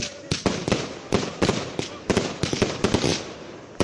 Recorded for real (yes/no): yes